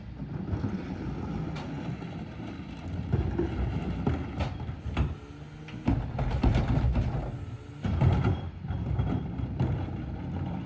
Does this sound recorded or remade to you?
recorded